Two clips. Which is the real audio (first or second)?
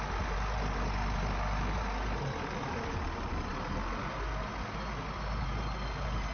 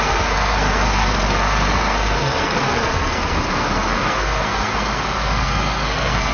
first